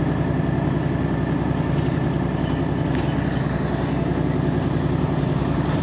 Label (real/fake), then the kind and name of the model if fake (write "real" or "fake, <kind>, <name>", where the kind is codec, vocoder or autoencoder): real